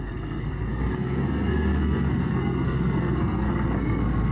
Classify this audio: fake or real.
fake